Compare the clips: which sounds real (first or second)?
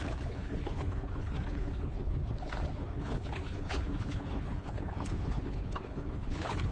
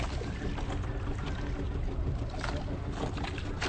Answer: second